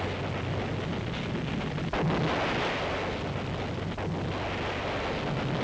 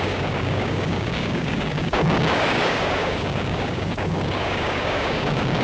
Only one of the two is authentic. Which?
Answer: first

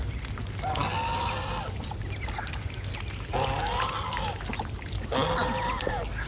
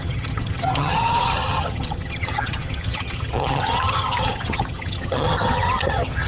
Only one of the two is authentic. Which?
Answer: first